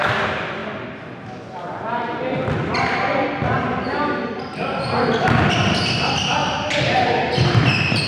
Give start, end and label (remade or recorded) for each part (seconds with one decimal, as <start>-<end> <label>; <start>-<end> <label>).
0.0-6.4 recorded; 6.4-8.1 remade